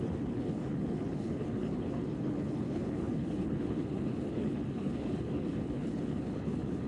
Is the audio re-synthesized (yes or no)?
yes